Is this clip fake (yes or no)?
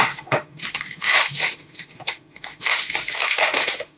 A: yes